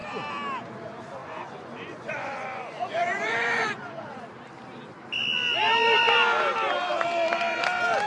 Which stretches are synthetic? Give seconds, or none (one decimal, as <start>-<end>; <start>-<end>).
1.2-4.2